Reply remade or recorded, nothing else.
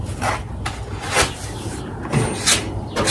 recorded